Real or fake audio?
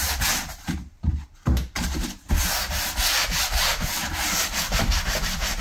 fake